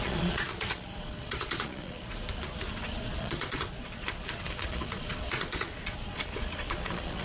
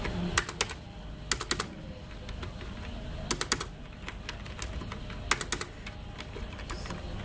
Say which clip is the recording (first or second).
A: second